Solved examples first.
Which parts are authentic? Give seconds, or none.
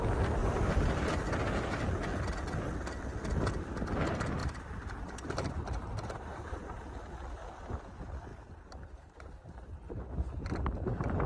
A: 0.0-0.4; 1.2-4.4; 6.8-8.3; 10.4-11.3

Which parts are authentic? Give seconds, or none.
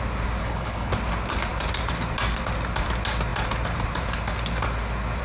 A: 0.0-0.4; 0.9-5.2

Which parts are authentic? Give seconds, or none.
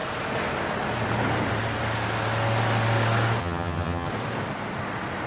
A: 0.0-3.4; 4.1-5.3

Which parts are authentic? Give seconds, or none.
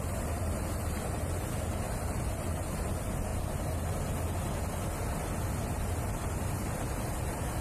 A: 3.3-5.7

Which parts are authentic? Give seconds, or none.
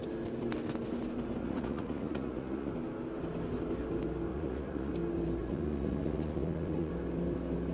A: 0.0-1.4; 2.7-4.3; 4.9-5.4; 6.9-7.7